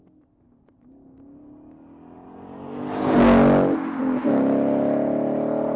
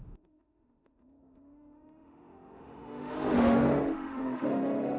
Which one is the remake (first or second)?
second